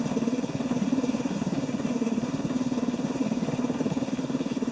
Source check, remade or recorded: remade